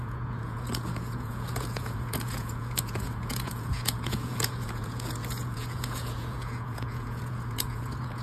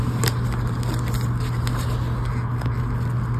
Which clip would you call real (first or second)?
second